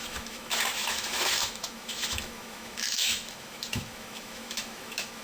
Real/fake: fake